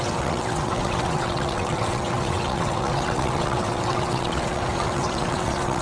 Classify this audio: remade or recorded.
remade